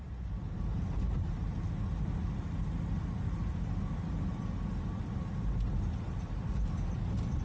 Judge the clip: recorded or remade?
recorded